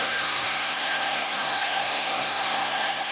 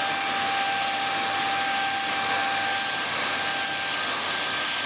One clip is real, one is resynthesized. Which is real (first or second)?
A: second